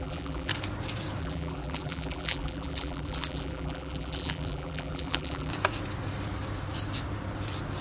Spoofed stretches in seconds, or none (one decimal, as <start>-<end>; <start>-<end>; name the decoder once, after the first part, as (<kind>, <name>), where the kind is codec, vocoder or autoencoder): 0.0-0.5 (vocoder, BigVGAN v2); 1.2-5.5